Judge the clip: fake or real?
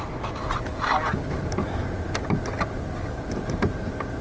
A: real